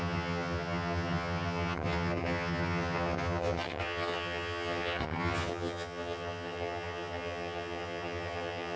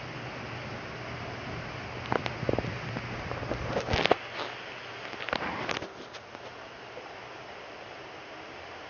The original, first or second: second